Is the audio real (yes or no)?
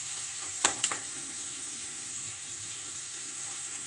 no